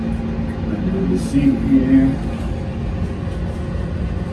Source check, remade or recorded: recorded